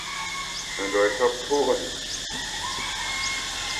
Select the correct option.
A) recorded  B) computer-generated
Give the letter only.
A